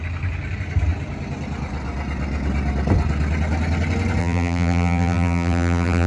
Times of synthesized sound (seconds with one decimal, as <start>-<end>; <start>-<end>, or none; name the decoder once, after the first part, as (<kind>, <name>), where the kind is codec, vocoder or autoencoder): 4.2-6.1 (vocoder, BigVGAN v2)

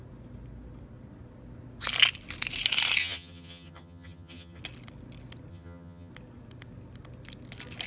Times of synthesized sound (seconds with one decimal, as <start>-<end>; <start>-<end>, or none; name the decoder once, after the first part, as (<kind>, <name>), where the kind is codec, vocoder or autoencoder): 3.0-4.6 (vocoder, HiFi-GAN); 5.5-6.1

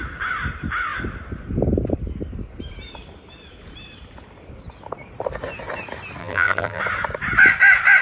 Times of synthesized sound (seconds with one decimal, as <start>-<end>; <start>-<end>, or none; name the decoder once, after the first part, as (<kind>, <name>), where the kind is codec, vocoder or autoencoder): 6.2-6.8 (vocoder, BigVGAN v2)

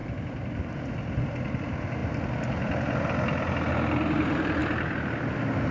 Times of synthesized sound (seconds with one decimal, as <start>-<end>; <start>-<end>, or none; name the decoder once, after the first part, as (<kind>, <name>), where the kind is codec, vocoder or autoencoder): 0.0-0.7 (vocoder, BigVGAN v2)

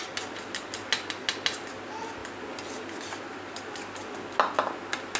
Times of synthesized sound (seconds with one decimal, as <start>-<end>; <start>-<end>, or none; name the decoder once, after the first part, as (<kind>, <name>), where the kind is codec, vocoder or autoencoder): none

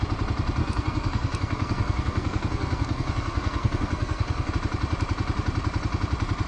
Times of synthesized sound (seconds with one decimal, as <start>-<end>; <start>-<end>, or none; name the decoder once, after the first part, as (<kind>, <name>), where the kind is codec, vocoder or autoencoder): 0.6-4.5 (codec, SNAC)

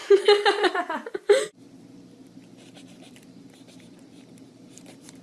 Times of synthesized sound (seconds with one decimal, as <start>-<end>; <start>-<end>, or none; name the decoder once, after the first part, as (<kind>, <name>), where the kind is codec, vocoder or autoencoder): 3.1-5.2 (vocoder, BigVGAN v2)